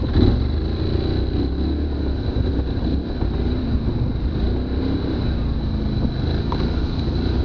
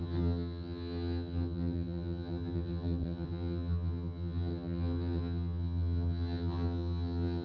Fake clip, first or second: second